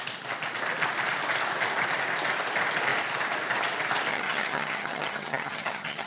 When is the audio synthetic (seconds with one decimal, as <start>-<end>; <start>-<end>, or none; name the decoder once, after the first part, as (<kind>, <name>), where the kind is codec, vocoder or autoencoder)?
4.1-6.1 (vocoder, HiFi-GAN)